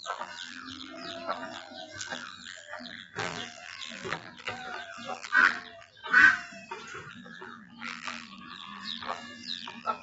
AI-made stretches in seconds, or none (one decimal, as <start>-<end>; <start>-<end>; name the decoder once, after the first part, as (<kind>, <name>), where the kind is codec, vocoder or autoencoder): 0.0-6.0 (vocoder, BigVGAN v2); 7.1-10.0